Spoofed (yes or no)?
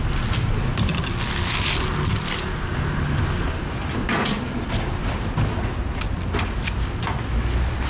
no